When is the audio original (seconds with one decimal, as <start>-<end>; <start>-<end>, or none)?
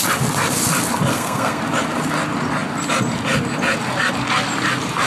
0.0-1.1; 1.6-5.1